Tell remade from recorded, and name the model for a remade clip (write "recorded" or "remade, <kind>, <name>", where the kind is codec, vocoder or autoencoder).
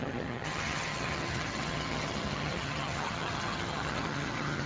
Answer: remade, vocoder, HiFi-GAN